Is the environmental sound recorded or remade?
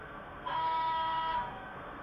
remade